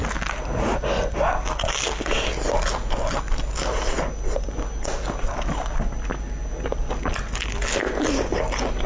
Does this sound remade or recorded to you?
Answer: recorded